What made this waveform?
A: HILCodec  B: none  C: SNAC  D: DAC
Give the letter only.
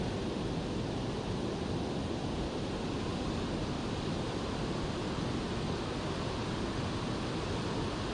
B